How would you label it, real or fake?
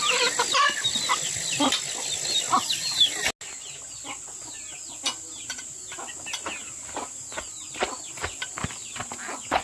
real